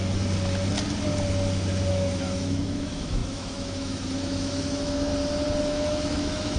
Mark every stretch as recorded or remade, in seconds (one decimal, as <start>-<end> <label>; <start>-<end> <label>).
0.0-1.9 recorded; 1.9-5.1 remade; 5.1-5.6 recorded; 5.6-6.6 remade